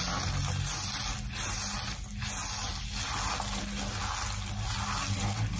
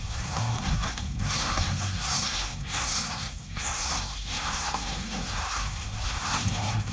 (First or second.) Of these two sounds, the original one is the first